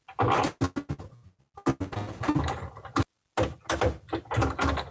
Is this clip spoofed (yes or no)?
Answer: no